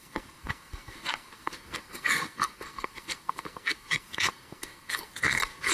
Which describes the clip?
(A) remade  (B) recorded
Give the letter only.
A